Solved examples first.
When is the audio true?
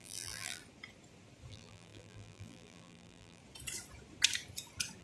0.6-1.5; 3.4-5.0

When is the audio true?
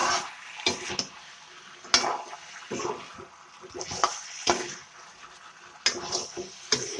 0.0-7.0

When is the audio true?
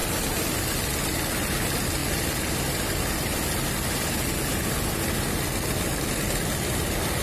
0.0-7.2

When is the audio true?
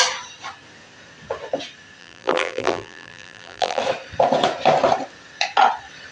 0.0-2.0; 3.8-6.1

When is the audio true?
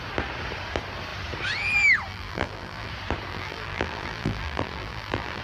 0.0-2.1; 2.9-3.3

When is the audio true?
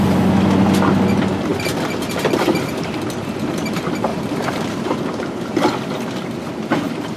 0.0-4.1; 5.7-7.2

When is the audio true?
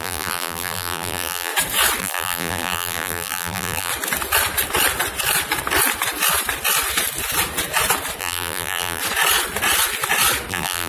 1.5-2.0; 3.9-8.2; 9.0-10.5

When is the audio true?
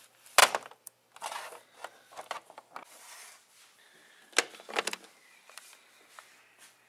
0.0-0.4; 1.1-6.9